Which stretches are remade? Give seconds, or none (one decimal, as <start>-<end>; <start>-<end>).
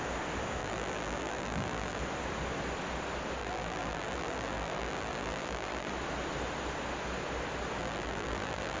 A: 0.6-2.0; 3.4-5.9; 7.8-8.8